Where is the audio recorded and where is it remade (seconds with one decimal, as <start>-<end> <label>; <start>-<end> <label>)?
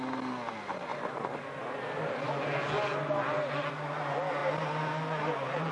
0.0-5.7 recorded